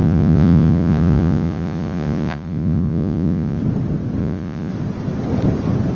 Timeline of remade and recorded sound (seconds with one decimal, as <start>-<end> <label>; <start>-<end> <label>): 0.0-3.6 remade; 3.6-4.2 recorded; 4.2-4.7 remade; 4.7-6.0 recorded